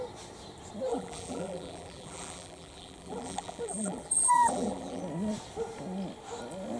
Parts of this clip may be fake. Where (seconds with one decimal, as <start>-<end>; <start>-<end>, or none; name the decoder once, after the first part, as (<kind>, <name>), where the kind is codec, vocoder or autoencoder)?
0.9-5.0 (vocoder, BigVGAN v2)